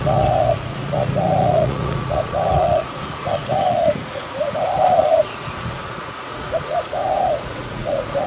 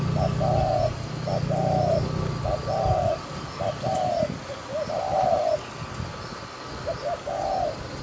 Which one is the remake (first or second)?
first